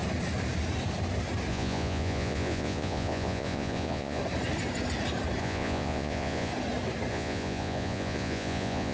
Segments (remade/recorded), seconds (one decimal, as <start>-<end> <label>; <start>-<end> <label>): 0.0-1.5 recorded; 1.5-4.2 remade; 4.2-5.4 recorded; 5.4-6.5 remade; 6.5-7.1 recorded; 7.1-8.9 remade